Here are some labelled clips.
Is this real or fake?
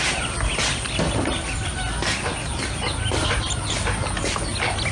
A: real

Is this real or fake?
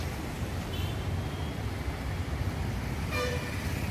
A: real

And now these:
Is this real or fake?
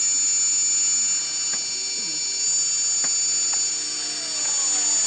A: real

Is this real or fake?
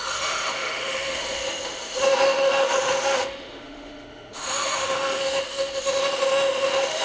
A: fake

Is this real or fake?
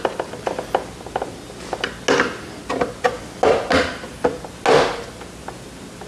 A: real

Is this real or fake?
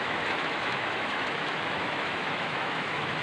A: fake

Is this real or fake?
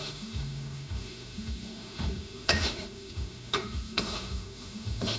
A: fake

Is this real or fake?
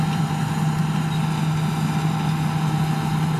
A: real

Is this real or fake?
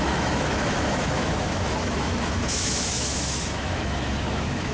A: fake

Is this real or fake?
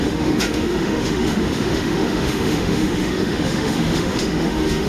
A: fake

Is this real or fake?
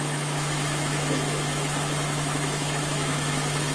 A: fake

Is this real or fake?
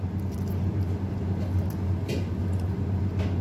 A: real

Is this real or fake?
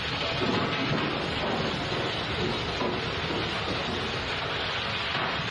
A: real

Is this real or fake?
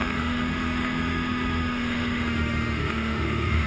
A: fake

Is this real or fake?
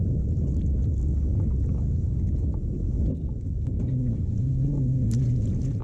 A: real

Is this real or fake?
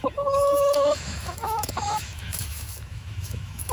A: fake